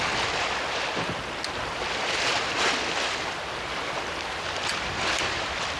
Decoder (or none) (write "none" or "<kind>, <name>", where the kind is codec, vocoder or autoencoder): none